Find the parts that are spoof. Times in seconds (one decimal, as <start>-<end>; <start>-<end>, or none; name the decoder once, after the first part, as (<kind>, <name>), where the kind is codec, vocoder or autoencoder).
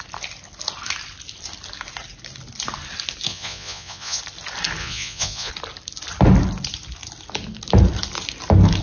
3.3-4.2 (vocoder, Vocos); 4.8-5.5